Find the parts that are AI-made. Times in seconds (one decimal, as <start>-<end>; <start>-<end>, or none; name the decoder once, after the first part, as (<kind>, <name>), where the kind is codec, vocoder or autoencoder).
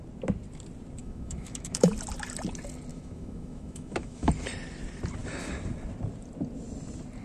1.0-1.9 (autoencoder, DAC-VAE); 2.9-4.3